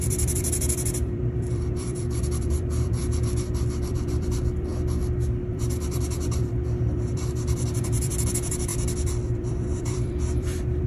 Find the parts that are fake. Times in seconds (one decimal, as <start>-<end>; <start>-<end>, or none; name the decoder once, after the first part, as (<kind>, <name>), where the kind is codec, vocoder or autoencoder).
0.0-4.7 (vocoder, BigVGAN v2); 5.5-10.9